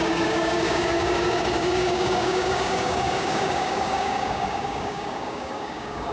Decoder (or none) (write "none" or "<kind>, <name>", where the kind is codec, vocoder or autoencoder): codec, DAC